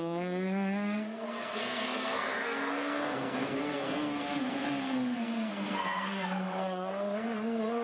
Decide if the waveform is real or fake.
fake